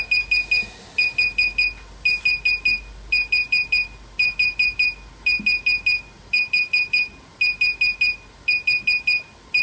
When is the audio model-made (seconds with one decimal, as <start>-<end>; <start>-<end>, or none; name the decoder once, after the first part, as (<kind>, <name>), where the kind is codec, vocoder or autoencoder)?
none

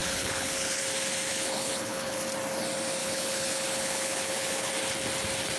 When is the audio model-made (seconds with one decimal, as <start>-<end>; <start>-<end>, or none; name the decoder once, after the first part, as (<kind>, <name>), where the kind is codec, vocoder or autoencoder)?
0.0-0.8 (codec, HILCodec); 1.3-2.2; 3.0-4.7

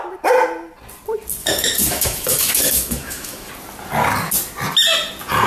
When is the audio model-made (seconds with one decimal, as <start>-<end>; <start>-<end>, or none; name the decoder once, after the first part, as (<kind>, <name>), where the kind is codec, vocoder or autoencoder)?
1.4-3.5 (autoencoder, DAC-VAE)

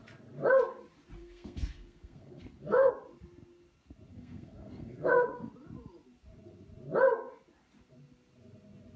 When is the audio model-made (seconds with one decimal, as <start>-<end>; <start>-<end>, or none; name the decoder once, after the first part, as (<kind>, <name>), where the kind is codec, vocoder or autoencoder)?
1.2-2.9 (codec, SNAC); 4.1-5.5

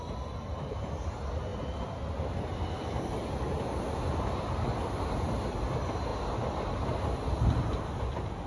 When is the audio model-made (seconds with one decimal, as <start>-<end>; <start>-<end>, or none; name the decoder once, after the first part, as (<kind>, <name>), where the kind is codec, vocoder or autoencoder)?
none

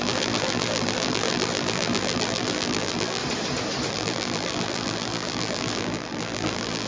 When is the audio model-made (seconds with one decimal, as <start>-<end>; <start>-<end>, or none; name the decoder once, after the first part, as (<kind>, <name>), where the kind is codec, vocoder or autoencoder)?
0.0-3.2 (vocoder, BigVGAN v2); 3.9-6.9

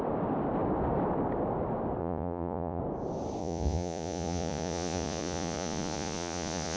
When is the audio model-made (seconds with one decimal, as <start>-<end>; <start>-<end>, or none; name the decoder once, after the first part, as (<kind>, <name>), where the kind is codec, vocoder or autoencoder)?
2.0-2.8 (vocoder, Vocos); 3.4-6.8